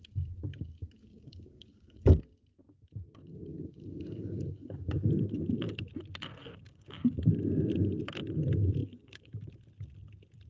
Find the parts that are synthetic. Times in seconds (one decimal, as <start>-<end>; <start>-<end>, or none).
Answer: 1.0-2.2; 2.6-5.8; 6.5-7.2; 8.8-9.5